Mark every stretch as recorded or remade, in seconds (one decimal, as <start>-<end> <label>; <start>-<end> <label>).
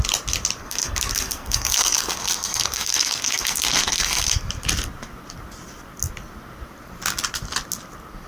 0.0-0.6 recorded; 0.6-4.4 remade; 4.4-8.3 recorded